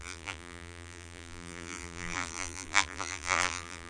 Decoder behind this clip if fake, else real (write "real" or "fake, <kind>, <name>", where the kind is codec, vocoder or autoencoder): fake, vocoder, BigVGAN v2